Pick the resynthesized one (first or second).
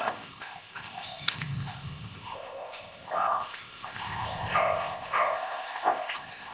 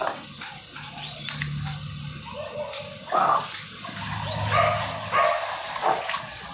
first